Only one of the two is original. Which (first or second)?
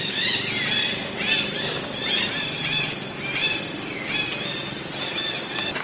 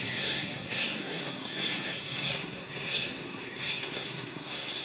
first